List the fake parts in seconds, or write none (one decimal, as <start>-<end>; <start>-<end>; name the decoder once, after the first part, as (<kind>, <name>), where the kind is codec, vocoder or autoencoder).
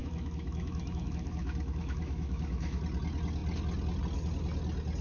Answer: 0.0-2.8 (autoencoder, DAC-VAE)